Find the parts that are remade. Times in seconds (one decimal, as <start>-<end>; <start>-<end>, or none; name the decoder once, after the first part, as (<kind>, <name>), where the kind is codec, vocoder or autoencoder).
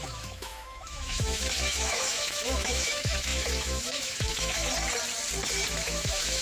0.0-4.7 (autoencoder, DAC-VAE); 5.7-6.4